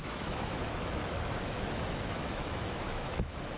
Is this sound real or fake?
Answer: fake